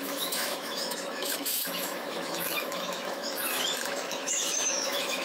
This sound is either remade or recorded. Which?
remade